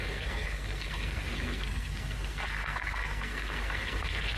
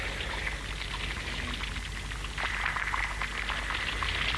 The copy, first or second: first